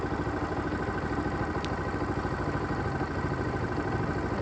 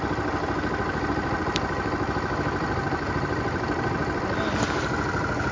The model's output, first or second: second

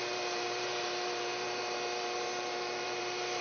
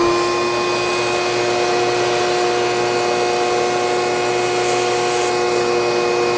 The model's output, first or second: first